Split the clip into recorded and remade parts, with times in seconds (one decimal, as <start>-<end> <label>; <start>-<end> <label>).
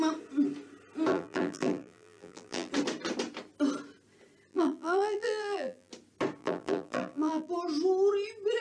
0.0-1.1 recorded; 1.1-2.7 remade; 2.7-4.5 recorded; 4.5-5.9 remade; 5.9-6.4 recorded; 6.4-7.5 remade; 7.5-8.6 recorded